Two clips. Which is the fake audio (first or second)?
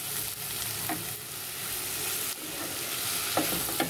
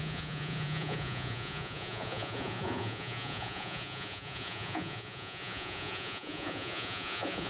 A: second